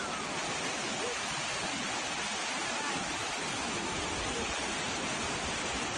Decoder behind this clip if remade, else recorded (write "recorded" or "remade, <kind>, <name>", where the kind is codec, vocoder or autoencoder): recorded